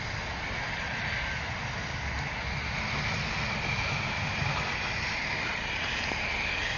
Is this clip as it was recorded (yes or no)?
yes